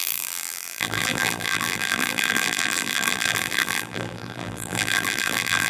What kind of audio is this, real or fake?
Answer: fake